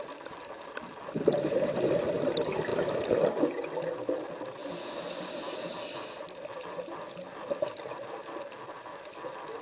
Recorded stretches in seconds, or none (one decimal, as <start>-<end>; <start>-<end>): 0.0-9.6